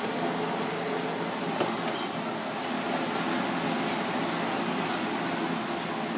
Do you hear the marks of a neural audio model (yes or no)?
no